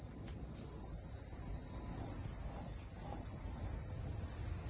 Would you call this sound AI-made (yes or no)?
no